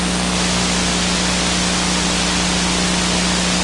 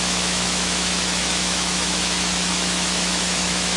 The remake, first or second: second